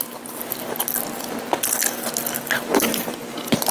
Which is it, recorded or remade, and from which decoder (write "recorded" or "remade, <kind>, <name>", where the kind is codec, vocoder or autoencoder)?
recorded